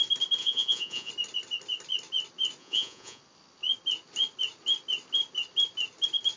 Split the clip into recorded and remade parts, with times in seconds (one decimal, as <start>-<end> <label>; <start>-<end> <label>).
0.0-0.4 recorded; 0.4-1.1 remade; 1.1-2.6 recorded; 2.6-3.2 remade; 3.2-6.4 recorded